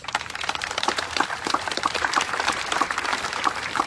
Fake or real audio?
fake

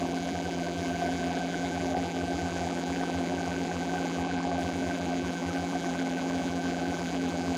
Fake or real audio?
fake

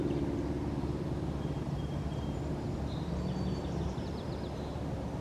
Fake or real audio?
real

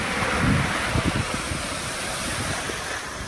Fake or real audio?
real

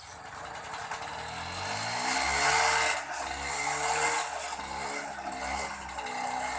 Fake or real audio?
real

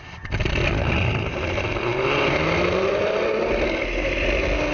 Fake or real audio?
real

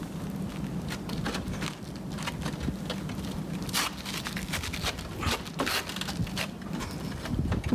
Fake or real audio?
real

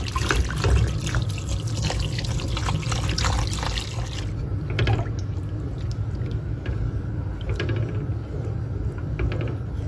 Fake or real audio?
real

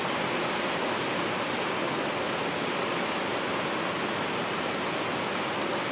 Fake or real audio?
real